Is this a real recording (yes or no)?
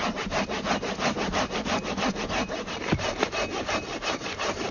yes